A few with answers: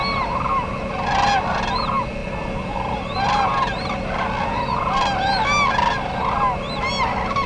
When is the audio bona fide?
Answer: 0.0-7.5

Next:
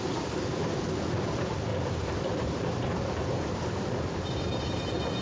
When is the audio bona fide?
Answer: 0.0-1.7; 4.8-5.2